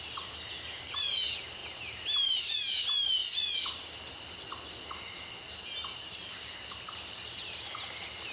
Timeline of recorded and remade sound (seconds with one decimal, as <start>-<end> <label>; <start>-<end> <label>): 0.0-8.3 recorded